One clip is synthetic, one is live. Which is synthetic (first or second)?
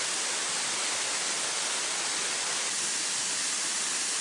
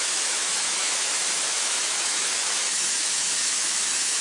second